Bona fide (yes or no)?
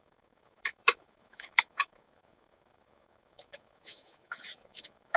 no